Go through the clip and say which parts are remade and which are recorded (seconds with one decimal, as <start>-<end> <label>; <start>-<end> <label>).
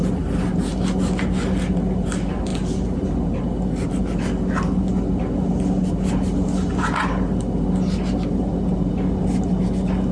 0.0-10.1 recorded